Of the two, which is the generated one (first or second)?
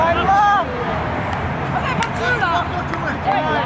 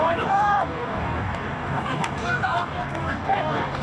second